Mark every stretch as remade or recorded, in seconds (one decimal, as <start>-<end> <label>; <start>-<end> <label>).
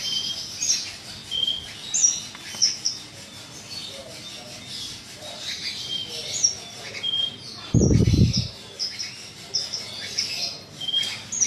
0.0-11.5 recorded